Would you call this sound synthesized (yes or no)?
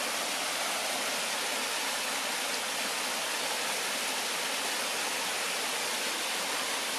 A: no